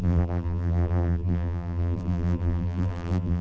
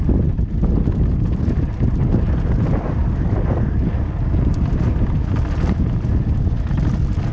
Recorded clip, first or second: second